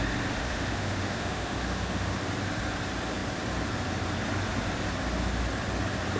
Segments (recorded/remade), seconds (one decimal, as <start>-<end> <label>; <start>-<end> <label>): 0.0-0.4 recorded; 0.4-2.2 remade; 2.2-6.2 recorded